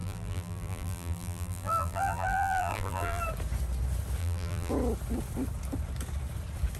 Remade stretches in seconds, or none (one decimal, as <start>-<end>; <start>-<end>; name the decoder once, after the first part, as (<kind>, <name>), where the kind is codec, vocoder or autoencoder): 0.0-3.2 (vocoder, BigVGAN v2); 4.2-4.7